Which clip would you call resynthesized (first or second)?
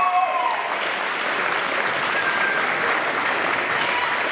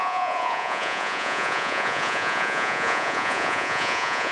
second